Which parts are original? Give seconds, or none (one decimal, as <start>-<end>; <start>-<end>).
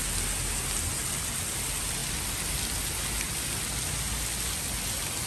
0.0-5.3